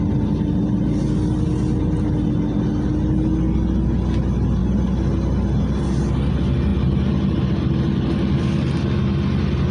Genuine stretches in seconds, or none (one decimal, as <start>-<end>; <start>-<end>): 0.0-9.7